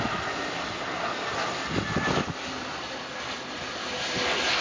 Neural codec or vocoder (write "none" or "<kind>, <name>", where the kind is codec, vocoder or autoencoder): none